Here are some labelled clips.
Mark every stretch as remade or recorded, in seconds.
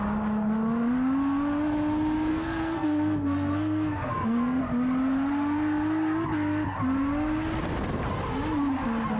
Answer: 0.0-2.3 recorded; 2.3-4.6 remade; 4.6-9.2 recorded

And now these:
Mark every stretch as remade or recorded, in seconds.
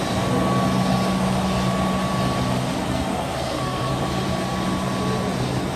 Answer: 0.0-2.9 recorded; 2.9-4.0 remade; 4.0-5.8 recorded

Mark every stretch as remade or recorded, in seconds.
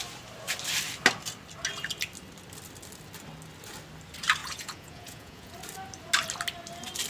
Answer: 0.0-4.4 recorded; 4.4-5.5 remade; 5.5-7.1 recorded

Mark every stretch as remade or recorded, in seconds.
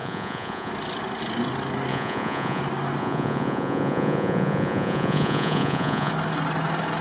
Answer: 0.0-0.7 remade; 0.7-1.9 recorded; 1.9-2.6 remade; 2.6-3.0 recorded; 3.0-6.1 remade; 6.1-7.0 recorded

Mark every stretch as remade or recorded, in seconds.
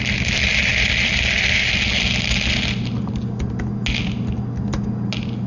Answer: 0.0-5.5 recorded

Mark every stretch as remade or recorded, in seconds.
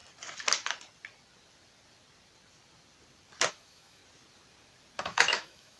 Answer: 0.0-3.5 recorded; 3.5-4.0 remade; 4.0-5.0 recorded; 5.0-5.8 remade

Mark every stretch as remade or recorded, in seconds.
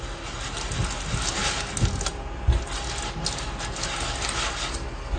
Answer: 0.0-5.2 recorded